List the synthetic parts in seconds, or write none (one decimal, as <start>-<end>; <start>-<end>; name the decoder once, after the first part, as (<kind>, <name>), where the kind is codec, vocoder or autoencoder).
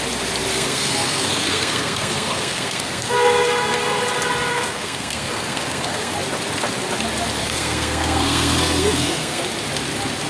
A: 0.5-4.0 (codec, SNAC); 4.5-6.1; 7.4-9.4